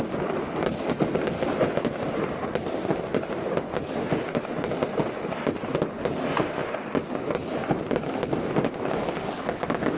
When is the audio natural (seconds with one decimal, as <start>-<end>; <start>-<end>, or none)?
0.0-10.0